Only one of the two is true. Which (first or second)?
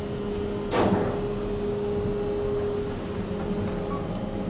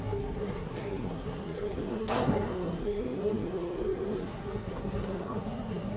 first